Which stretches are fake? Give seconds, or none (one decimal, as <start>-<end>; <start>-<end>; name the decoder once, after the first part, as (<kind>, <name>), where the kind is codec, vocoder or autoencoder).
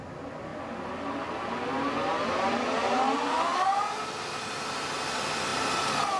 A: none